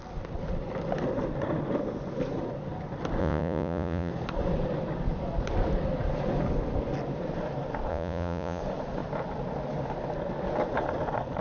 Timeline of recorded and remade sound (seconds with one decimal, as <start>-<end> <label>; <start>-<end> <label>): 0.0-3.2 recorded; 3.2-4.1 remade; 4.1-7.9 recorded; 7.9-8.6 remade; 8.6-11.4 recorded

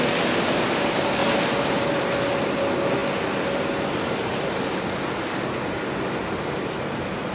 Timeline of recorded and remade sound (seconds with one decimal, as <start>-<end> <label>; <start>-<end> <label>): 0.0-7.3 recorded

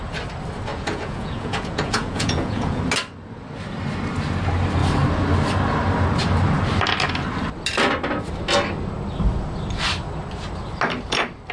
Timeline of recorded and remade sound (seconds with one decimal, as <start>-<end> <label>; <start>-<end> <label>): 0.0-0.7 recorded; 0.7-2.8 remade; 2.8-11.5 recorded

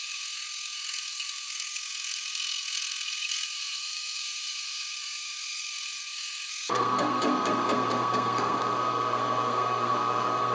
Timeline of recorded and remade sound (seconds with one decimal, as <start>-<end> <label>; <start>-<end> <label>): 0.0-10.5 remade

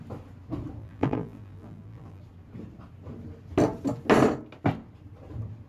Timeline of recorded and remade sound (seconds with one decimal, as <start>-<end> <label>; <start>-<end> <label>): 0.0-0.8 recorded; 0.8-2.2 remade; 2.2-5.7 recorded